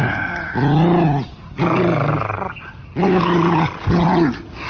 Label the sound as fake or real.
real